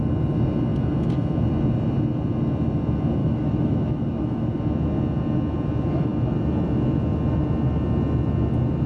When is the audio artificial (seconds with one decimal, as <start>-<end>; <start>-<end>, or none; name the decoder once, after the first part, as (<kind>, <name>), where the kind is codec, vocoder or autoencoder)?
3.2-4.6 (autoencoder, DAC-VAE)